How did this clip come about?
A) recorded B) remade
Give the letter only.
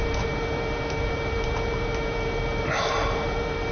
B